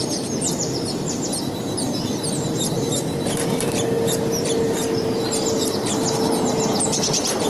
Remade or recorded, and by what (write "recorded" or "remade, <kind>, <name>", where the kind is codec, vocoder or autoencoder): remade, vocoder, BigVGAN v2